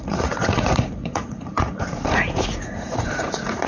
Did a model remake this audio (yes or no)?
yes